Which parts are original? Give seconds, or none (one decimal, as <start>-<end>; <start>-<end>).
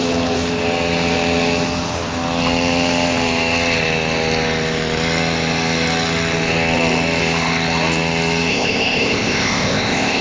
0.0-8.5